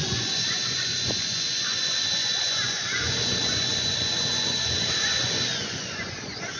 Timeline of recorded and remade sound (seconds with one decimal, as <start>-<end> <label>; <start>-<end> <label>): 0.0-6.6 remade